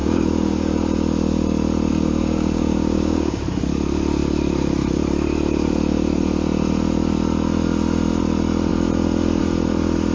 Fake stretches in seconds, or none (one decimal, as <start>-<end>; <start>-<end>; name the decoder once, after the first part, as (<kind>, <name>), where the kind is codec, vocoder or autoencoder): 0.0-0.8 (codec, DAC); 1.9-3.4